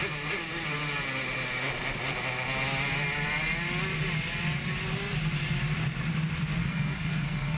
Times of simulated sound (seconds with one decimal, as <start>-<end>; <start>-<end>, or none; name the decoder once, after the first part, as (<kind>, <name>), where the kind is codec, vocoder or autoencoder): 6.6-7.6 (codec, SNAC)